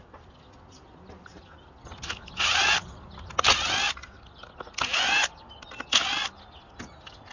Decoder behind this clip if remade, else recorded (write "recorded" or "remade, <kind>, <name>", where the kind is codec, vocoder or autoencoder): recorded